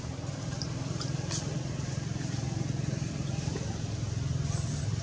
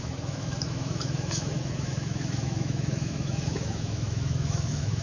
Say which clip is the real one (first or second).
first